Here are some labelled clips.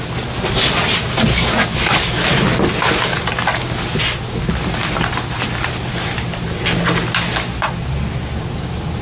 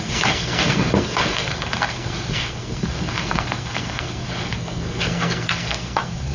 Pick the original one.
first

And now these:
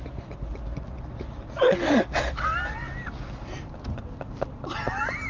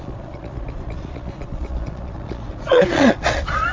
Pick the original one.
first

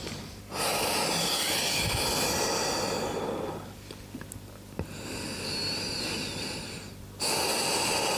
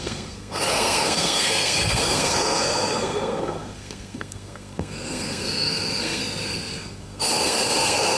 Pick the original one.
first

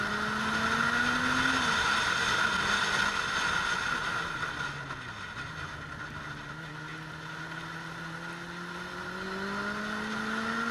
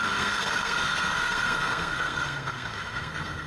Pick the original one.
first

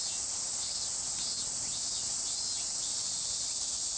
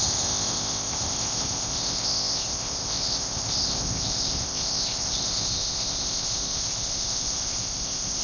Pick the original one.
first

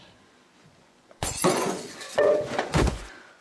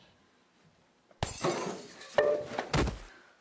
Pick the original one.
second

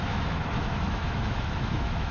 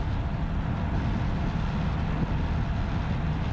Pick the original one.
second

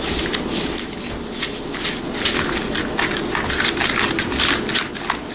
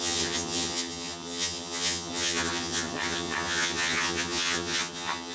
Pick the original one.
first